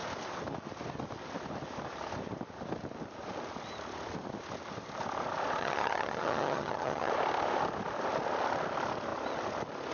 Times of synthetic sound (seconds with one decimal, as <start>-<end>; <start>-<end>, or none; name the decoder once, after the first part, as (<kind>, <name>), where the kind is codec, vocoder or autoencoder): 5.6-7.1 (vocoder, HiFi-GAN)